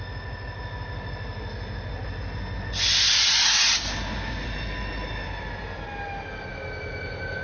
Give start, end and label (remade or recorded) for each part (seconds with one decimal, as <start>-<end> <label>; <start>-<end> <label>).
0.0-7.4 recorded